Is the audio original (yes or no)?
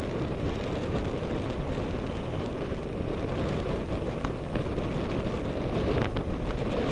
yes